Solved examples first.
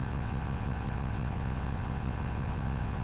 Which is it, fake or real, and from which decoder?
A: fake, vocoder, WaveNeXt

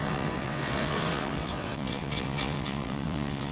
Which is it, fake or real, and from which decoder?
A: fake, vocoder, WaveNeXt